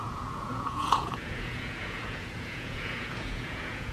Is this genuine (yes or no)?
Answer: no